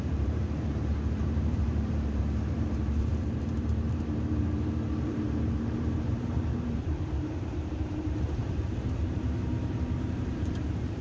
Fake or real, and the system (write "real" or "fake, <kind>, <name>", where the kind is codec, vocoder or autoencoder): fake, vocoder, BigVGAN v2